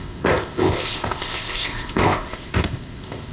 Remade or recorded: remade